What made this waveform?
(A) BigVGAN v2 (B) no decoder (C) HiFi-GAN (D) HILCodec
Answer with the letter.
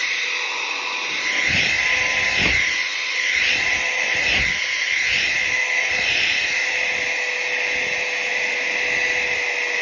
B